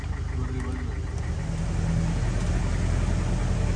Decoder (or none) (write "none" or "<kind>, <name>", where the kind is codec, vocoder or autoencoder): none